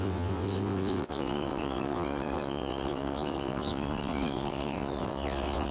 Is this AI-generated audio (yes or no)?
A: yes